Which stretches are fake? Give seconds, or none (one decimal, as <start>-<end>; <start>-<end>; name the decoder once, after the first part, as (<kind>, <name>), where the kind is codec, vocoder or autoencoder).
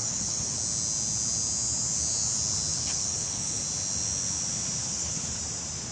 0.0-0.6 (codec, HILCodec); 2.7-3.6; 4.8-5.4